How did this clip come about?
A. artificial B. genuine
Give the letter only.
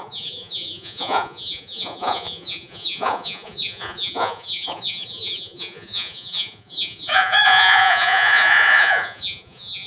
A